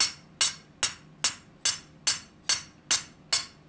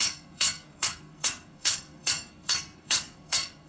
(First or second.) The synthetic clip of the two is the second